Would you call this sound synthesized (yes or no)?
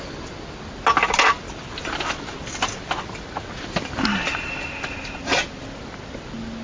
no